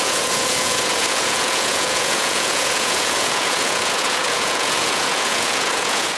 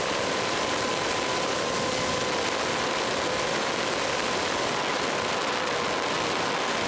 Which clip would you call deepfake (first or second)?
first